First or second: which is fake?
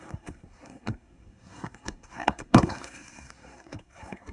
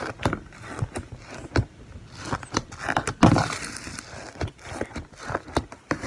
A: first